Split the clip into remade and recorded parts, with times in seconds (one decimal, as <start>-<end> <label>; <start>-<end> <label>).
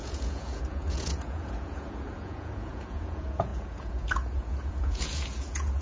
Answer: 0.0-5.8 remade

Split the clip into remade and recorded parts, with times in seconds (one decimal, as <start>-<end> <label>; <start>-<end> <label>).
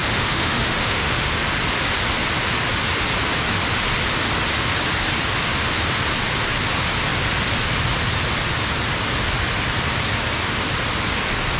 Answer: 0.0-1.5 remade; 1.5-11.6 recorded